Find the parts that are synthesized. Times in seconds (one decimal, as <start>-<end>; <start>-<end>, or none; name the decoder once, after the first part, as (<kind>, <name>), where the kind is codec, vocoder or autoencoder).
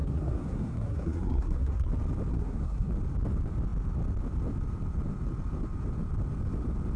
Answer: 0.0-1.9 (codec, SNAC); 2.3-2.9